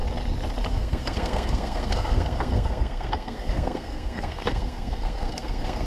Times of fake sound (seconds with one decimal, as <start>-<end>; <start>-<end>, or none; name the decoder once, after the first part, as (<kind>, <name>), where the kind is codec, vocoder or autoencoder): 0.7-5.9 (codec, SNAC)